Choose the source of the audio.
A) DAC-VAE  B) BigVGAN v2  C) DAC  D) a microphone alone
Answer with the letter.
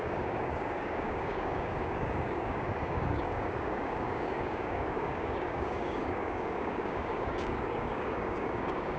C